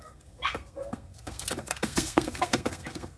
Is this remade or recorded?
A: remade